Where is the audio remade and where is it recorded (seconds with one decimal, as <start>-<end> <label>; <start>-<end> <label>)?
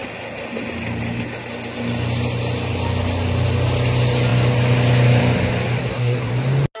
0.0-5.8 recorded; 5.8-6.3 remade; 6.3-6.8 recorded